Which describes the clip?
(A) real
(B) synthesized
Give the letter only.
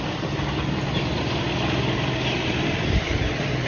B